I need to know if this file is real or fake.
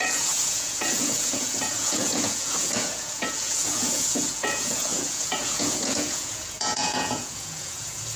fake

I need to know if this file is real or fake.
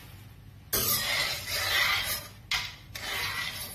real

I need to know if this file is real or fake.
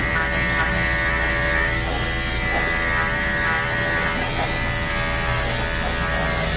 real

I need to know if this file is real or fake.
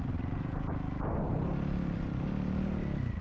real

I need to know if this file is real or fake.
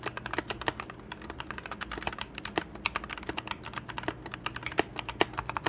real